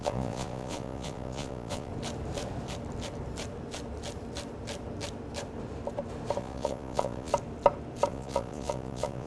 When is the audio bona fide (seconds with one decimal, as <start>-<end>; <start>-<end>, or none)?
1.9-6.4; 7.3-8.1